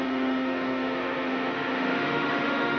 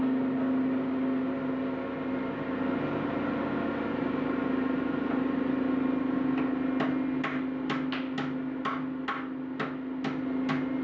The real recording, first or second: second